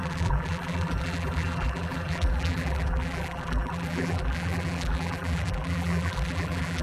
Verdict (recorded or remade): remade